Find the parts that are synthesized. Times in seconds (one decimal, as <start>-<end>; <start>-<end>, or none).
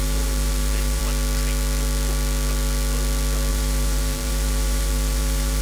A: 0.0-1.0; 3.5-5.6